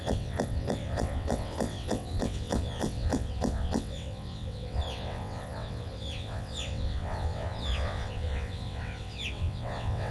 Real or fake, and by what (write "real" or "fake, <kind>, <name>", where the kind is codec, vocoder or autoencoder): fake, vocoder, WaveNeXt